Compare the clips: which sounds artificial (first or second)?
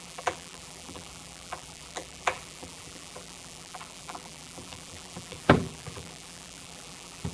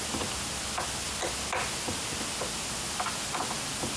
first